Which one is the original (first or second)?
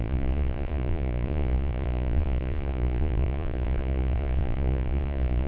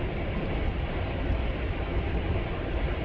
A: second